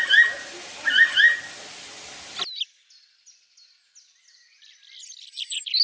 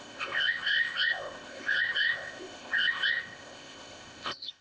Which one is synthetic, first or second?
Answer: second